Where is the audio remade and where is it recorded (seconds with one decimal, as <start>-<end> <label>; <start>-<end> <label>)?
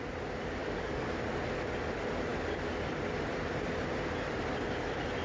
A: 0.0-0.6 recorded; 0.6-1.2 remade; 1.2-5.2 recorded